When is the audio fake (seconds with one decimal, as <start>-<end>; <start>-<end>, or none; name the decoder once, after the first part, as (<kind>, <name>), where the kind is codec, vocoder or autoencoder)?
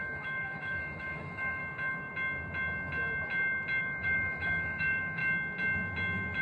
0.0-1.6 (autoencoder, DAC-VAE); 3.8-5.2